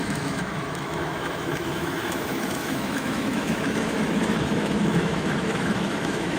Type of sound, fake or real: fake